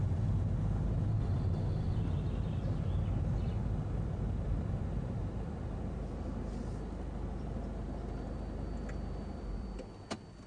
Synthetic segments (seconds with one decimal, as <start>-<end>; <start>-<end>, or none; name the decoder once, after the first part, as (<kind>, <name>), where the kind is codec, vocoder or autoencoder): none